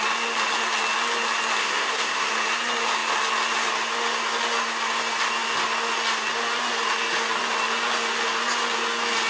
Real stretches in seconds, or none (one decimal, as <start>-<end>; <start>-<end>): 0.0-1.6; 2.3-9.3